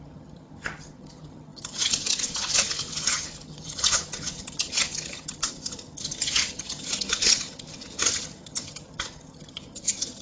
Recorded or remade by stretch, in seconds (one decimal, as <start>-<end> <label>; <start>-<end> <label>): 0.0-10.2 remade